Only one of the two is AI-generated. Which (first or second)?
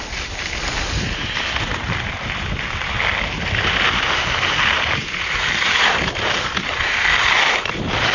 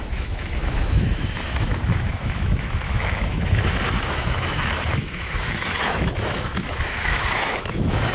second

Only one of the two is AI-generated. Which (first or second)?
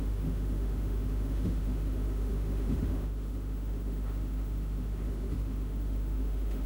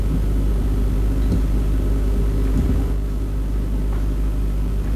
first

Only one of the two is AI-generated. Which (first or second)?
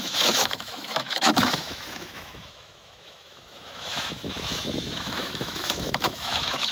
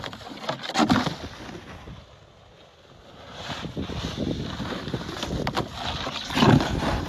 first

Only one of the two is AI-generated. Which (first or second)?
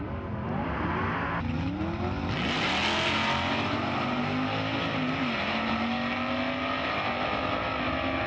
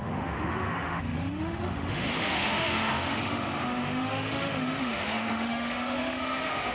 second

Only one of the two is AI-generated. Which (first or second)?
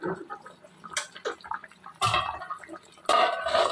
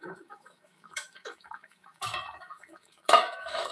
second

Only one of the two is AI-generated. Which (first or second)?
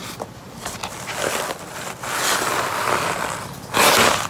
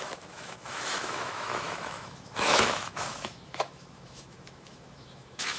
second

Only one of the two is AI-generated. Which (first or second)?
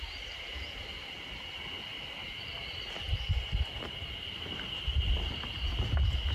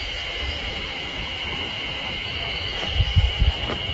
second